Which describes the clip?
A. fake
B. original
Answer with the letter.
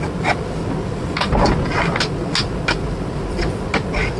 B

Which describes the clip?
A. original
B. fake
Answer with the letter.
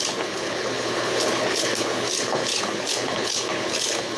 B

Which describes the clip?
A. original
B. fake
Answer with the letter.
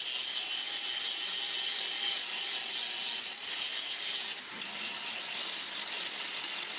A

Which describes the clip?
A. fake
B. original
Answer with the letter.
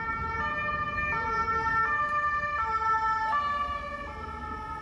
B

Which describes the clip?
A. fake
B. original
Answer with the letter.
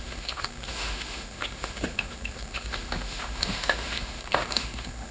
A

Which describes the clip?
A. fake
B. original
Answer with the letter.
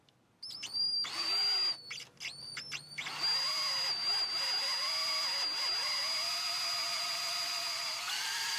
B